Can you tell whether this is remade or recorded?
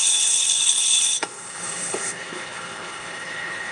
remade